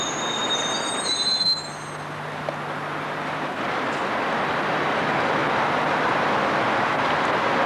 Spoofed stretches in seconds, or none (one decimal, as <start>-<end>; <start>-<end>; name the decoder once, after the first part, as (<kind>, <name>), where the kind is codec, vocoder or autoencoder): none